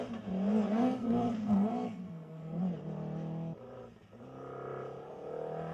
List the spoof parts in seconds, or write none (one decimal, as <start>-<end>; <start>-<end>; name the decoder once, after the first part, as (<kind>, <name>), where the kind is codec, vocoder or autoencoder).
0.7-2.6 (codec, SNAC)